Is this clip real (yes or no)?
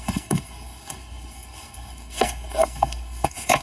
no